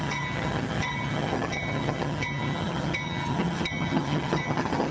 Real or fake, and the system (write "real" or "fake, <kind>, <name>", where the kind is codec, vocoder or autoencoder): fake, vocoder, HiFi-GAN